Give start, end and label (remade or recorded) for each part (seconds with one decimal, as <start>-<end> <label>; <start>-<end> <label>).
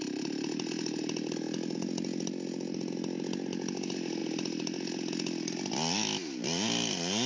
0.0-7.3 recorded